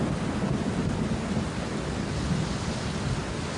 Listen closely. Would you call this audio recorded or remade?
recorded